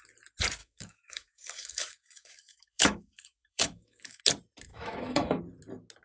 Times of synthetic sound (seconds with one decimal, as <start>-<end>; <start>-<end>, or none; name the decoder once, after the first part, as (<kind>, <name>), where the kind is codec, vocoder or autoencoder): 0.6-4.2 (autoencoder, DAC-VAE); 4.7-5.4